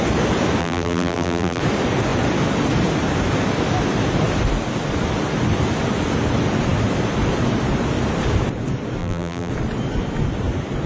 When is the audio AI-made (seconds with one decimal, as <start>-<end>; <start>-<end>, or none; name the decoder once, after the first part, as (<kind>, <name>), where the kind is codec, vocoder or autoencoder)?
0.6-1.6 (vocoder, BigVGAN v2); 9.0-9.5